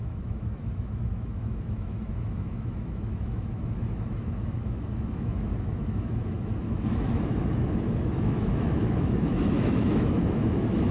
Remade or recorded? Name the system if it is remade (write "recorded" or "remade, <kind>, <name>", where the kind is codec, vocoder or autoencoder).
remade, autoencoder, DAC-VAE